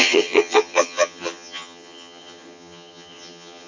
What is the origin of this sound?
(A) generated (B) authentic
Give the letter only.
A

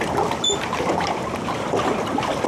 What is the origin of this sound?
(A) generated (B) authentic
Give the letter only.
B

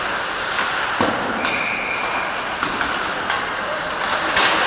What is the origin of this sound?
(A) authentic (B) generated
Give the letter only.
A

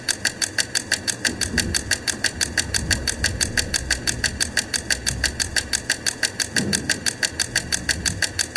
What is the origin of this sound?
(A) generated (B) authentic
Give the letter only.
B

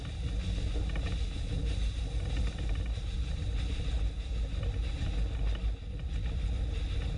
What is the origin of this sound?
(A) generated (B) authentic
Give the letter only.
B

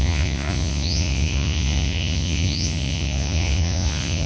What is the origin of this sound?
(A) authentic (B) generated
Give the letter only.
B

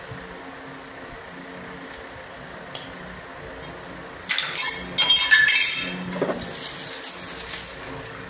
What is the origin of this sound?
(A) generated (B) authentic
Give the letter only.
B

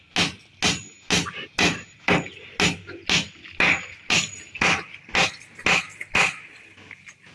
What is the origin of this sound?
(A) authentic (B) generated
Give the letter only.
A